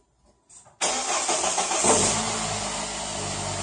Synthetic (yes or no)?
no